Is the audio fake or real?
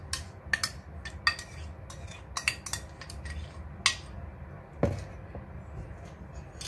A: real